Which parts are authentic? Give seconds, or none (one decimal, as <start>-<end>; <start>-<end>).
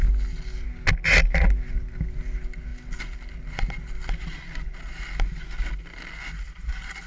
0.0-7.1